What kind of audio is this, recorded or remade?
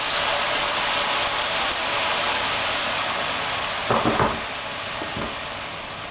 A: recorded